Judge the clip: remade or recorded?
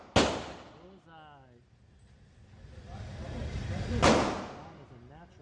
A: recorded